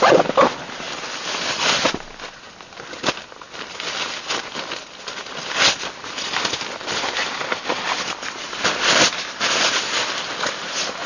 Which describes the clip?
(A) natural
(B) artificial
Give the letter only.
A